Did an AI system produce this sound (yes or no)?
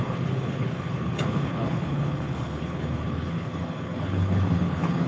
yes